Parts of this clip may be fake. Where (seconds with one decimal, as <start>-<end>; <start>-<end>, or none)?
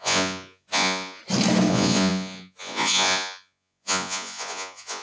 0.0-1.2; 1.7-5.0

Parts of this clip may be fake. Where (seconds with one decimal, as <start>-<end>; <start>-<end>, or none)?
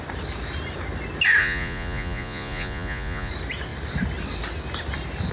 1.4-3.3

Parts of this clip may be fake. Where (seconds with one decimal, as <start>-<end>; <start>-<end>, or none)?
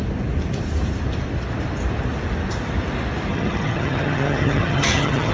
3.3-5.3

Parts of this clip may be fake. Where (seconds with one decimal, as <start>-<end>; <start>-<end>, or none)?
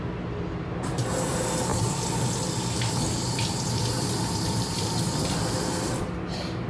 none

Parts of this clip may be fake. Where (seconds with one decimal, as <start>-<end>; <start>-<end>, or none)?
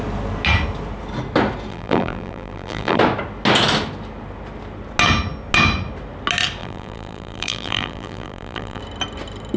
1.7-3.0; 6.6-8.8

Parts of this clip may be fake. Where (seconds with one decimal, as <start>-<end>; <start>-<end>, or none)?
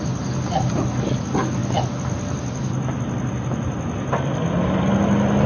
none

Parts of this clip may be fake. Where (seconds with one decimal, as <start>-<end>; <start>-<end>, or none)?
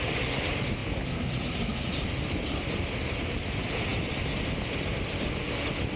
none